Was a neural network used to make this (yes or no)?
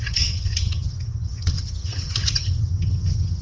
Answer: yes